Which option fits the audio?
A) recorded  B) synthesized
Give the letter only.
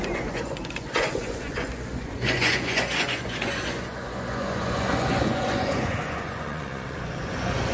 B